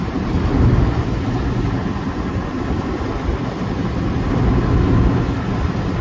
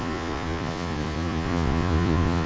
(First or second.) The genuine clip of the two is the first